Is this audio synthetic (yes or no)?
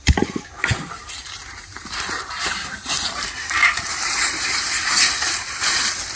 yes